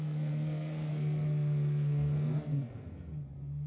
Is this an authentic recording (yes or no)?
no